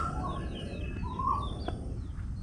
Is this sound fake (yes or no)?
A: no